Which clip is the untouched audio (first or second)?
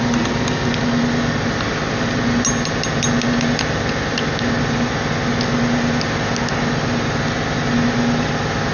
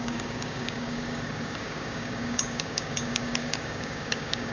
first